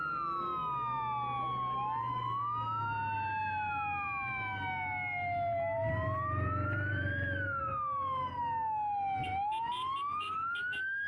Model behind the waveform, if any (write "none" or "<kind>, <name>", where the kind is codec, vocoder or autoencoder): none